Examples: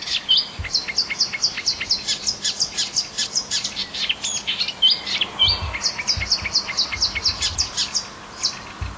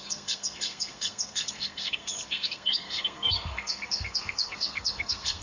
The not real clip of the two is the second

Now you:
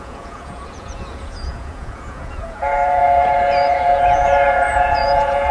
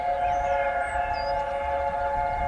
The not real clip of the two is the first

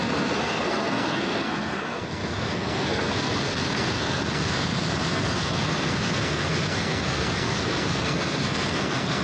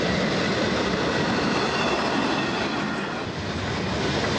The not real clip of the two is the first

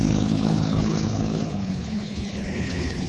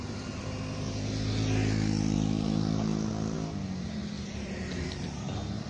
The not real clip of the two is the first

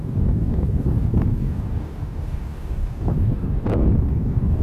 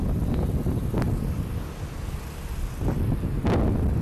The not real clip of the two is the first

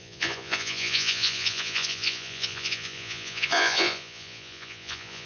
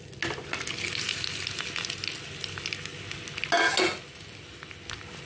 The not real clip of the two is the first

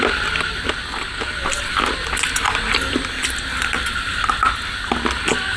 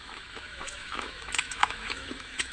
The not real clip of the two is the second